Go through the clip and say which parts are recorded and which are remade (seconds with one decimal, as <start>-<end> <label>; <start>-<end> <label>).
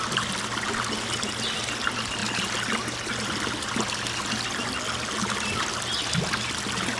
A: 0.0-7.0 recorded